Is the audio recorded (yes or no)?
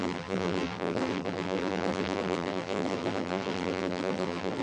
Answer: no